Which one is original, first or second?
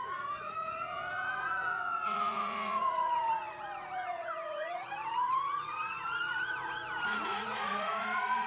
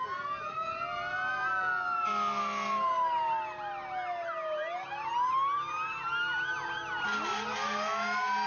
second